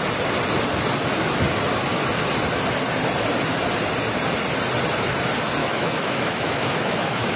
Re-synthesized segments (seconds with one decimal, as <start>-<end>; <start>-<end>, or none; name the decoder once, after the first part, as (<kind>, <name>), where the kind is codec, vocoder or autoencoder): 5.6-7.4 (autoencoder, DAC-VAE)